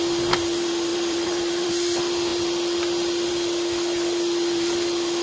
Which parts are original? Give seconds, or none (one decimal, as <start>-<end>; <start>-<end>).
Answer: 0.0-0.9; 1.7-5.2